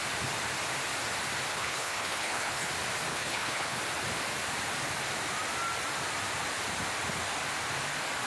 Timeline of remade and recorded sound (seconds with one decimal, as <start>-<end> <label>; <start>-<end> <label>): 0.0-1.5 recorded; 1.5-2.7 remade; 2.7-3.1 recorded; 3.1-3.8 remade; 3.8-8.3 recorded